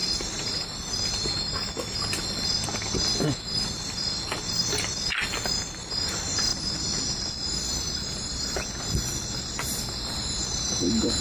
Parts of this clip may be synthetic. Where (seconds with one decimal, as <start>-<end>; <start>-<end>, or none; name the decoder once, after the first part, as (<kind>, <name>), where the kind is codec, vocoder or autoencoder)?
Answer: none